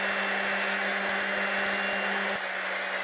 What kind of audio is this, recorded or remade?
recorded